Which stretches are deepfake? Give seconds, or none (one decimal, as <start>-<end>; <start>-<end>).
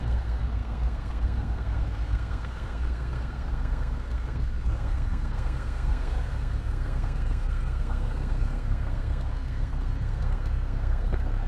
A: 0.0-11.5